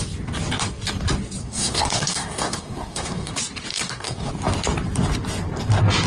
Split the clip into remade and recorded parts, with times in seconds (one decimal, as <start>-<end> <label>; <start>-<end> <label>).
0.0-1.4 recorded; 1.4-3.3 remade; 3.3-3.7 recorded; 3.7-4.3 remade; 4.3-6.1 recorded